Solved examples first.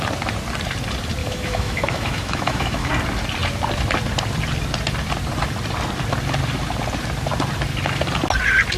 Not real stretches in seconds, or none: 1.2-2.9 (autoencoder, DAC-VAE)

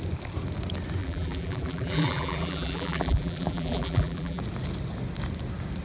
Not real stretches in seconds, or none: 1.0-4.4 (vocoder, BigVGAN v2)

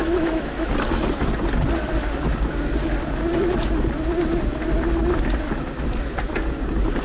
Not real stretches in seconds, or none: 0.0-0.7 (autoencoder, DAC-VAE)

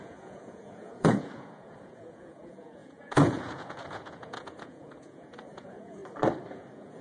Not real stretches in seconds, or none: 0.0-6.0 (vocoder, Vocos); 6.5-7.0

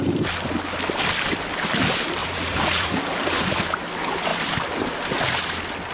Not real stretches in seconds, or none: 2.2-3.0 (vocoder, Vocos)

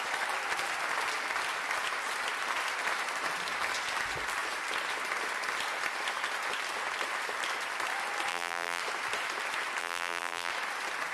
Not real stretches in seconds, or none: 8.3-8.8 (vocoder, BigVGAN v2); 9.8-10.5

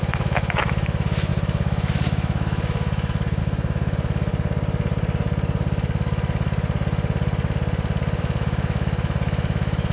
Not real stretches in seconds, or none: 0.0-4.3 (autoencoder, DAC-VAE); 8.2-9.9

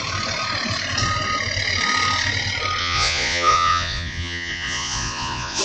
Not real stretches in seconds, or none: 2.8-5.6 (vocoder, Vocos)